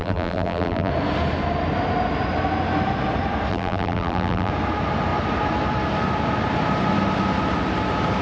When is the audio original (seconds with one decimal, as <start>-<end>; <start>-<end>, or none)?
0.9-3.5; 4.5-8.2